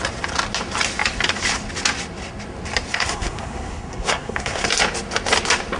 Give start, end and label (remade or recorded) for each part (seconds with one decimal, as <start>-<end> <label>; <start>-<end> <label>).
0.0-2.9 recorded; 2.9-4.7 remade; 4.7-5.8 recorded